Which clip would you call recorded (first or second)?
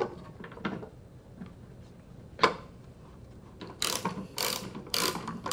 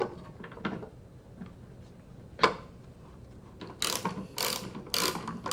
second